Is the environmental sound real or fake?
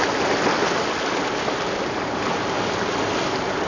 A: real